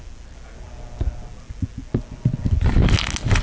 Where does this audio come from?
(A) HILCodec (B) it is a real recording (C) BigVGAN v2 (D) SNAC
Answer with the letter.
B